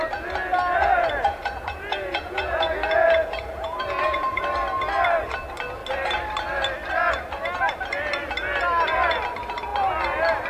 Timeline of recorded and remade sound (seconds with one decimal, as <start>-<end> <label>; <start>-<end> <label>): 0.0-0.8 recorded; 0.8-4.4 remade; 4.4-10.5 recorded

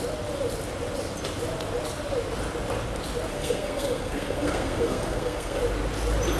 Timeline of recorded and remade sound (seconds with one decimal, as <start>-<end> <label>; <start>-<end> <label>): 0.0-3.3 recorded; 3.3-5.6 remade; 5.6-6.4 recorded

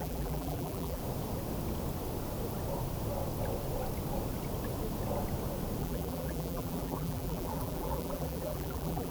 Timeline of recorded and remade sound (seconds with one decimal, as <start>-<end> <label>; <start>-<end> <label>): 0.0-1.0 remade; 1.0-5.8 recorded; 5.8-9.1 remade

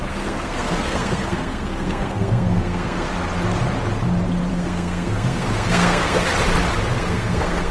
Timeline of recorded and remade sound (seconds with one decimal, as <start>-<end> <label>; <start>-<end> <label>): 0.0-3.1 remade; 3.1-4.5 recorded; 4.5-6.3 remade; 6.3-6.9 recorded; 6.9-7.7 remade

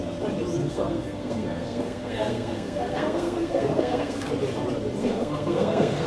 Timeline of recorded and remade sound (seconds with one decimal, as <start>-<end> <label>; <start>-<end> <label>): 0.0-0.6 recorded; 0.6-4.3 remade; 4.3-5.0 recorded; 5.0-6.1 remade

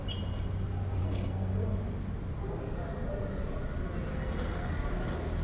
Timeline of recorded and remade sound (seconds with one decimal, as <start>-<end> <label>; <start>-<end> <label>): 0.0-1.0 recorded; 1.0-1.8 remade; 1.8-4.1 recorded; 4.1-4.7 remade; 4.7-5.4 recorded

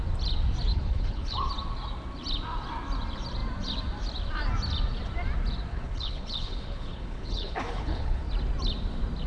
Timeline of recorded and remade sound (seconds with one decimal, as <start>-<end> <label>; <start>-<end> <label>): 0.0-0.7 recorded; 0.7-1.5 remade; 1.5-5.7 recorded; 5.7-8.3 remade; 8.3-9.3 recorded

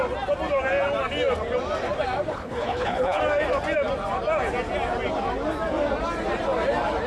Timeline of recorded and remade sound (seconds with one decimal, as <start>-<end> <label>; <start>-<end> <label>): 0.0-2.3 recorded; 2.3-3.2 remade; 3.2-7.1 recorded